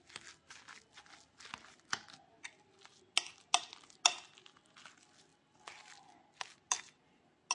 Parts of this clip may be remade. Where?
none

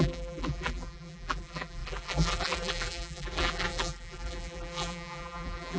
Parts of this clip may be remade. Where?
0.0-5.8 (vocoder, BigVGAN v2)

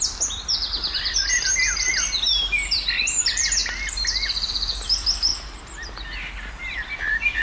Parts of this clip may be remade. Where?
0.0-3.6 (vocoder, BigVGAN v2); 4.5-5.3; 6.5-7.4

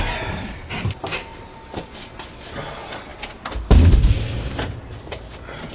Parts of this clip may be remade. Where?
1.3-2.1 (vocoder, BigVGAN v2)